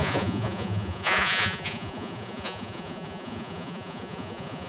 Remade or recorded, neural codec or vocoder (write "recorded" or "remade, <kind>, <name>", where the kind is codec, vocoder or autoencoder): remade, vocoder, Vocos